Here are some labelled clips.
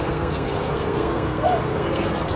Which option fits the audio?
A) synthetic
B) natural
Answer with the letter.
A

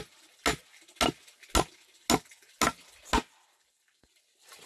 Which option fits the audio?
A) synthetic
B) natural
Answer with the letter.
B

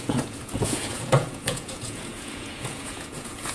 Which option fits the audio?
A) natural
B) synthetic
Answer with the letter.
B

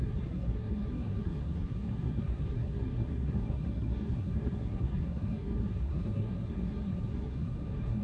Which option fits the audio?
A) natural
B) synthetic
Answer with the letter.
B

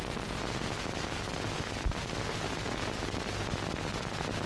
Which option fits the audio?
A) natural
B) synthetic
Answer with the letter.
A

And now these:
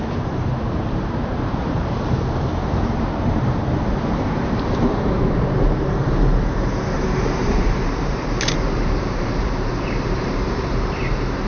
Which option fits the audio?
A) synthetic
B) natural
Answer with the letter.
A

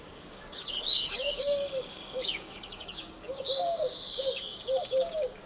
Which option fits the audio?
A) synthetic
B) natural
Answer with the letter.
A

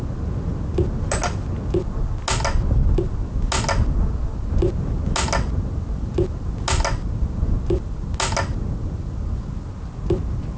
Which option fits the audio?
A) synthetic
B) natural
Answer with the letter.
B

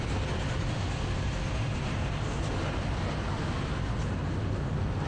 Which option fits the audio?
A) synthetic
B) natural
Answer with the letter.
B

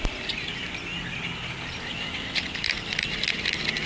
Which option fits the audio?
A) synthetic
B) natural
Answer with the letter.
B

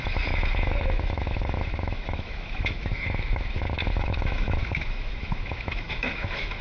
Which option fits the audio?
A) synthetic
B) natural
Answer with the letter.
A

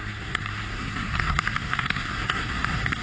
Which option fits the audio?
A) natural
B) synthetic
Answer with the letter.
B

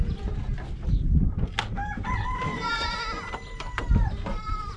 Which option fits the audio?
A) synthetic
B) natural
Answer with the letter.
B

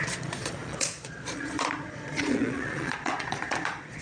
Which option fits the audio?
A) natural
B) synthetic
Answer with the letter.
B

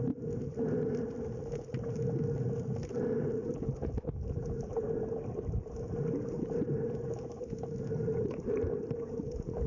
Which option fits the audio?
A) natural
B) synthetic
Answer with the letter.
A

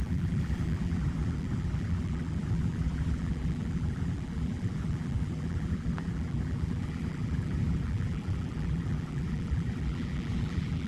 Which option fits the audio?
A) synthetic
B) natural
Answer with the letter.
A